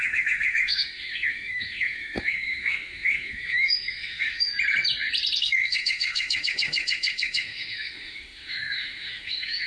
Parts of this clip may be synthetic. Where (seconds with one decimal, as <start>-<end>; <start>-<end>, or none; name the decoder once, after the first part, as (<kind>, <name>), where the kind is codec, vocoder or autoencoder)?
0.0-4.5 (autoencoder, DAC-VAE); 5.4-9.7